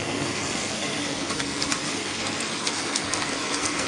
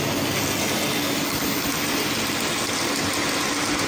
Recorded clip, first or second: second